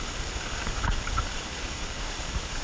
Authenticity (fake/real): fake